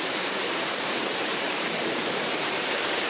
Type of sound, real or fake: fake